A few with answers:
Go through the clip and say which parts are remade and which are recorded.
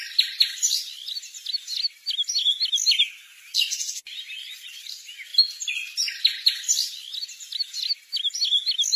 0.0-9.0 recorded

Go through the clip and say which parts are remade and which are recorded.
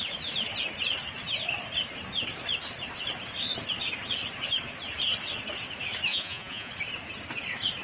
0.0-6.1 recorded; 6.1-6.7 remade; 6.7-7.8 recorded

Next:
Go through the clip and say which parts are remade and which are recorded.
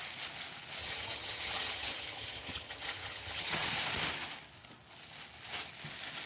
0.0-0.8 recorded; 0.8-3.7 remade; 3.7-6.3 recorded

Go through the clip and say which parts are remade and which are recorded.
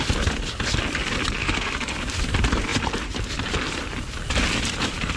0.0-1.4 recorded; 1.4-2.1 remade; 2.1-5.2 recorded